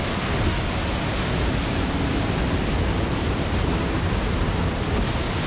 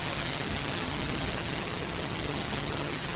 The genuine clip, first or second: first